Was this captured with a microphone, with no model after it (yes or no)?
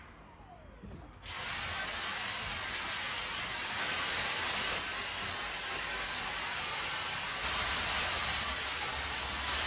yes